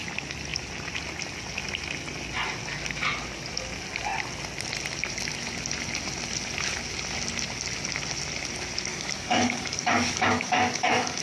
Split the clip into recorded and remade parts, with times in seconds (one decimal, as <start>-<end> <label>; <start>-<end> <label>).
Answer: 0.0-8.9 recorded; 8.9-11.2 remade